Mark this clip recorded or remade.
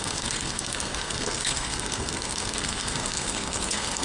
remade